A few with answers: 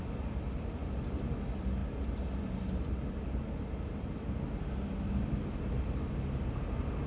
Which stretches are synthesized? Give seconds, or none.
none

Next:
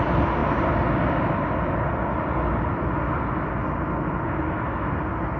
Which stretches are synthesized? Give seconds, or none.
none

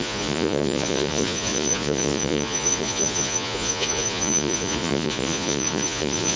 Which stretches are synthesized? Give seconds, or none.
0.0-6.4 (vocoder, Vocos)

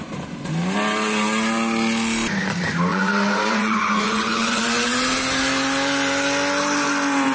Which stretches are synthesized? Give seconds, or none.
2.9-4.6 (vocoder, Vocos)

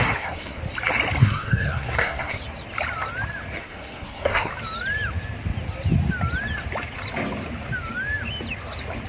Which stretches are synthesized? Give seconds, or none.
0.0-0.6 (codec, SNAC); 1.2-2.4; 3.6-4.5